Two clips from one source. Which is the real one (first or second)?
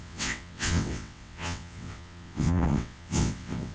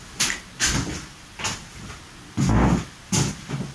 second